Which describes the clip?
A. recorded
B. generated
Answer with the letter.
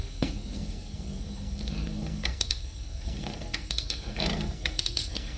B